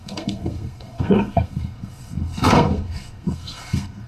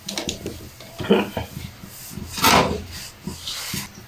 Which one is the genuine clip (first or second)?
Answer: second